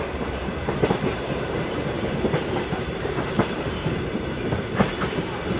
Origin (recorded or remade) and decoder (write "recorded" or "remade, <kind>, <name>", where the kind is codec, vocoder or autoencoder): remade, vocoder, BigVGAN v2